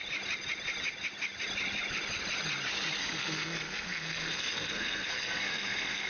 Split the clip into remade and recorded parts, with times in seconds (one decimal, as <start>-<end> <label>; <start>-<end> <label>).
0.0-3.0 recorded; 3.0-6.1 remade